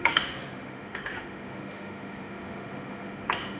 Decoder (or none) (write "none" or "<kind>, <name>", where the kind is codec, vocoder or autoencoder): autoencoder, DAC-VAE